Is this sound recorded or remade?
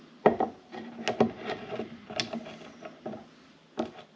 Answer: recorded